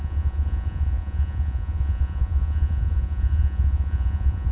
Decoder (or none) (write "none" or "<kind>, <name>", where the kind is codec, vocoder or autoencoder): vocoder, Vocos